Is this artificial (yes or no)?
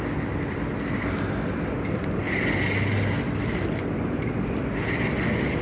no